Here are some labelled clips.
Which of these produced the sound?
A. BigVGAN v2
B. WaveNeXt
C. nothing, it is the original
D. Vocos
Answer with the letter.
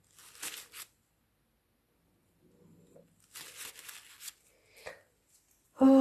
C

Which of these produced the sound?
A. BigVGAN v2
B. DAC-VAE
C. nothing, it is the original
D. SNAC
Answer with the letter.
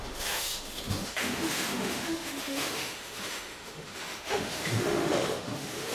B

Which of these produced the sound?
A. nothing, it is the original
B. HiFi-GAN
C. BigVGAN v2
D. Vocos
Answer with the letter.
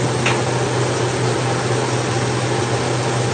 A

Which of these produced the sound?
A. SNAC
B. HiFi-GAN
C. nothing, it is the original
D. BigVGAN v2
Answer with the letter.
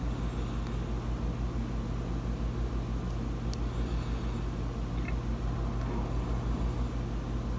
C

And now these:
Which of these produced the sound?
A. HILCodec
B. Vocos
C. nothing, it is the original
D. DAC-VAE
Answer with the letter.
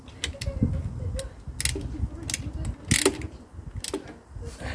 C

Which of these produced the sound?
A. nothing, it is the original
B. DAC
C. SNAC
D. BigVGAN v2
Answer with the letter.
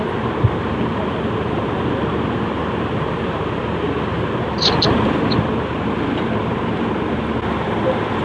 A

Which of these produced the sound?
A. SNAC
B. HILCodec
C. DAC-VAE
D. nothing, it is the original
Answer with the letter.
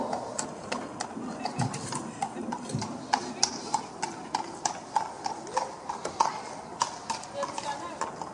D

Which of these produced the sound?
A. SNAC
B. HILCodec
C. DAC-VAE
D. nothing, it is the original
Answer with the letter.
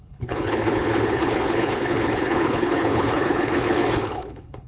B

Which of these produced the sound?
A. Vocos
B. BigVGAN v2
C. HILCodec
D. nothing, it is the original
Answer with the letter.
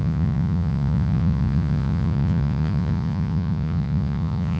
A